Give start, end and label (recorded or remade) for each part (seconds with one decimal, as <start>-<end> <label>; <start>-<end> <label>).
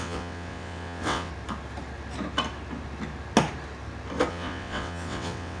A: 0.0-1.3 remade; 1.3-4.3 recorded; 4.3-5.6 remade